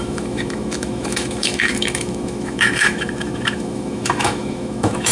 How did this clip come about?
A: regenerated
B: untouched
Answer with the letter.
A